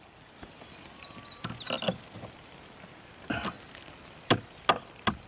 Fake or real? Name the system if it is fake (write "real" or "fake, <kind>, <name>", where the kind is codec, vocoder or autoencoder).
real